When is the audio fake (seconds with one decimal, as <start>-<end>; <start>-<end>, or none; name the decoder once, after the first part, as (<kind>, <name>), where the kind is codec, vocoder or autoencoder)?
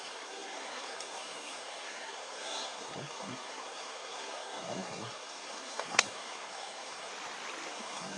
0.0-7.1 (codec, SNAC); 7.7-8.2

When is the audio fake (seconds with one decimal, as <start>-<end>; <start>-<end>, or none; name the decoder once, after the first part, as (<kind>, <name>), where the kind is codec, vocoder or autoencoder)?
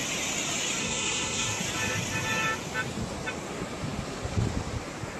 0.8-1.6 (codec, SNAC)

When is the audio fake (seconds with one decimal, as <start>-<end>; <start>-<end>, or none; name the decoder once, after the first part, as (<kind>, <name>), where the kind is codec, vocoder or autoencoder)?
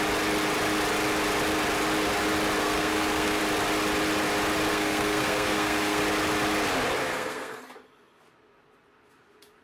2.6-3.4 (codec, SNAC); 4.7-6.0; 7.0-7.6